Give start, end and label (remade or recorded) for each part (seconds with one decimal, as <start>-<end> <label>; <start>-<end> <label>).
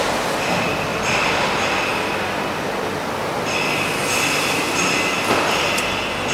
0.0-0.9 recorded; 0.9-1.4 remade; 1.4-6.3 recorded